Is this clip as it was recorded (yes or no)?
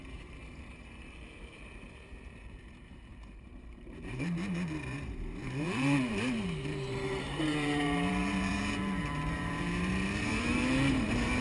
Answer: no